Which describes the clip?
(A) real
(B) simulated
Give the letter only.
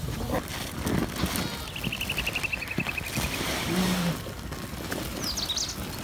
A